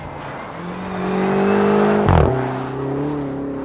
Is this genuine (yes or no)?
yes